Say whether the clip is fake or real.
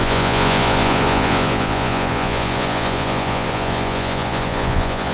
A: fake